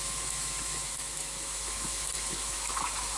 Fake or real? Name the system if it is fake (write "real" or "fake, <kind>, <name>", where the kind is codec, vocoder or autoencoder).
fake, autoencoder, DAC-VAE